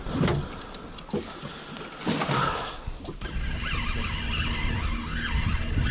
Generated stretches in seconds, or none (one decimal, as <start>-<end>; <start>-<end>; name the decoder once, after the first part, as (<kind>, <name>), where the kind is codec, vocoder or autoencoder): none